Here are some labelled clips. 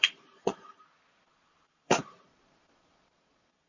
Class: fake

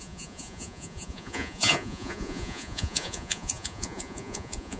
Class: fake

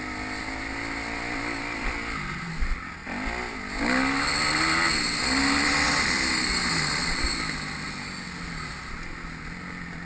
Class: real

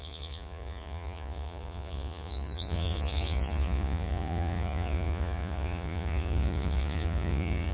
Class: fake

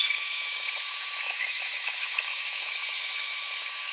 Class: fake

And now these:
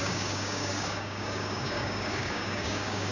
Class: fake